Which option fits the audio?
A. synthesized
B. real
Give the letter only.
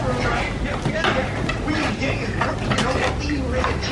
B